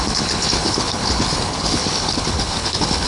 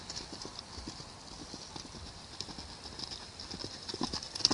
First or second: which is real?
second